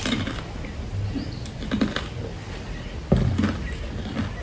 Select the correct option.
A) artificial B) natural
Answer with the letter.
B